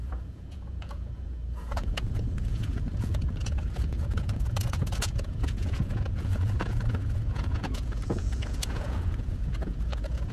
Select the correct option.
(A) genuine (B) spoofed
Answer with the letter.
B